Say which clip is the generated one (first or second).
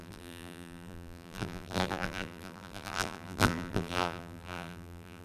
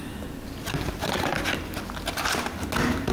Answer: first